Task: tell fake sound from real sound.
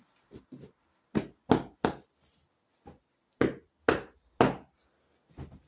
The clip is real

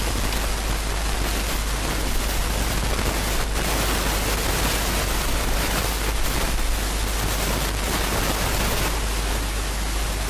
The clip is real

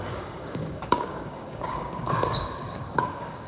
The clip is fake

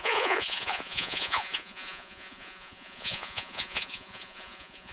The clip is fake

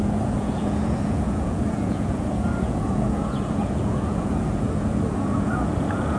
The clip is fake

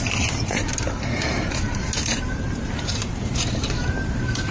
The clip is fake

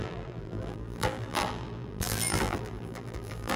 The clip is fake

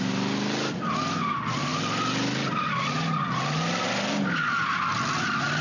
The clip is real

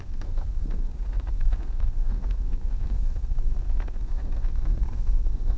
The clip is fake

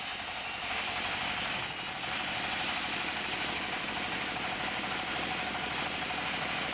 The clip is real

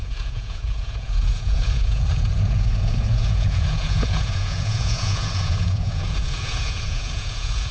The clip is fake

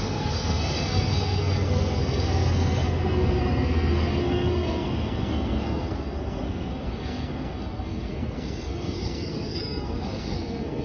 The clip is fake